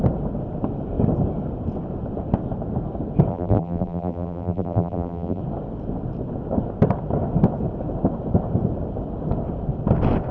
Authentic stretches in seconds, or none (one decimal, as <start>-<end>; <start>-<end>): 0.0-3.3; 5.4-10.3